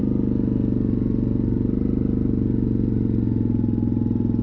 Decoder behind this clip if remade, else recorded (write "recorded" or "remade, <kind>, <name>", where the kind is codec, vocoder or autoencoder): recorded